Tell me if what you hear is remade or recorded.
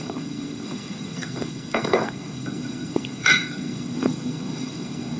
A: remade